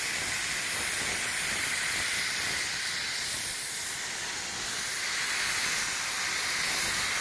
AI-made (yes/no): yes